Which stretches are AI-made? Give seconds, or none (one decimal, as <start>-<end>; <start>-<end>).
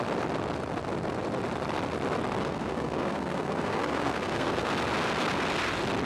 2.4-4.7